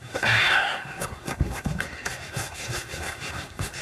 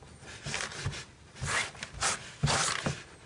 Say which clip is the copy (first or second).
first